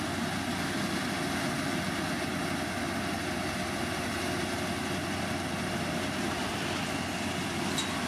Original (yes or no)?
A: yes